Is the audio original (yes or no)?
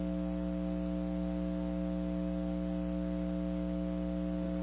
yes